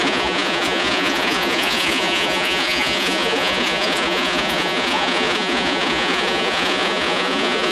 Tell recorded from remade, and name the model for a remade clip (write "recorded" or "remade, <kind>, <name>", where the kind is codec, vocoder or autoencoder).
remade, vocoder, Vocos